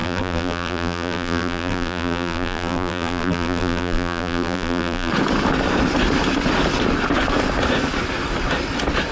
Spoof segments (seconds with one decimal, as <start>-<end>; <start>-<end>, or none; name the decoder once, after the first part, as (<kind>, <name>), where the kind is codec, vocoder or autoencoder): 0.0-5.1 (vocoder, BigVGAN v2)